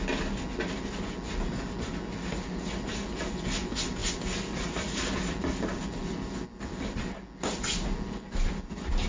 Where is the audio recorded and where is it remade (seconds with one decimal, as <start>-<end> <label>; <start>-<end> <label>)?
0.0-9.1 recorded